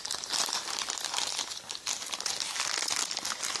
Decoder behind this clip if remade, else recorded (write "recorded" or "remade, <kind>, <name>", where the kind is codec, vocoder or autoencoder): recorded